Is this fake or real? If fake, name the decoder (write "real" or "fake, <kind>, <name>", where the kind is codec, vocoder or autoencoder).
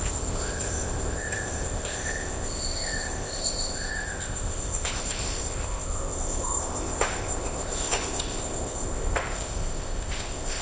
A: fake, codec, ZipCodec